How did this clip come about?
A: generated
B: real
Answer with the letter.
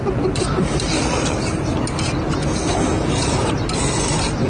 B